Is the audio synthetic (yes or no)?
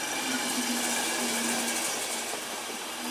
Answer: no